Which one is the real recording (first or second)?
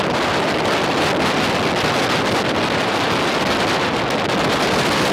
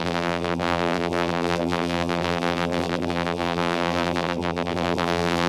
first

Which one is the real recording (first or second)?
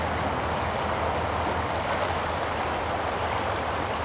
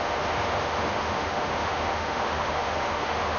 first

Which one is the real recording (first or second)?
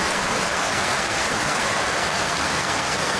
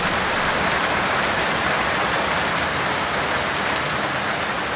second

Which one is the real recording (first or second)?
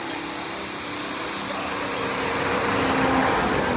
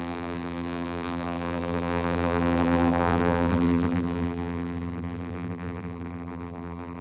first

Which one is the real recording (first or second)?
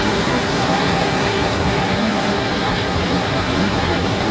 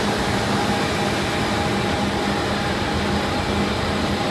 second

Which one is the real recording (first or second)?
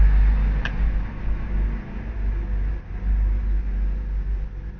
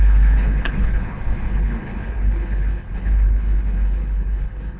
first